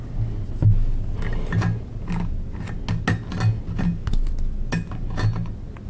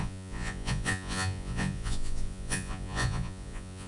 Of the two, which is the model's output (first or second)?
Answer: second